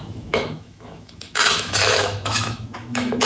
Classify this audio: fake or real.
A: fake